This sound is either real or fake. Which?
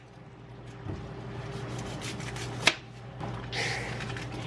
real